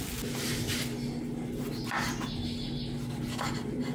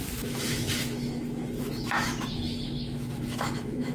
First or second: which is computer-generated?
second